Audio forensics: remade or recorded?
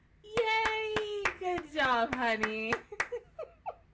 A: recorded